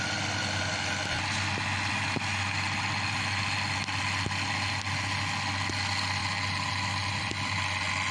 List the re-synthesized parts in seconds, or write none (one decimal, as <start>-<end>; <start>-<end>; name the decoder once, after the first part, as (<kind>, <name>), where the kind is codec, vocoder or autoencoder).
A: none

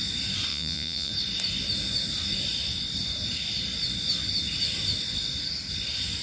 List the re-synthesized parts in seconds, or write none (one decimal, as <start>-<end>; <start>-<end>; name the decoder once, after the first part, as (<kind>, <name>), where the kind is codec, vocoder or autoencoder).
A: 0.5-1.1 (vocoder, Vocos)

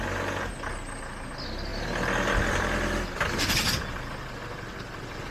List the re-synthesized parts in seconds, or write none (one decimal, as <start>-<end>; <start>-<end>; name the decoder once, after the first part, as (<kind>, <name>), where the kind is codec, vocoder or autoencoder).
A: none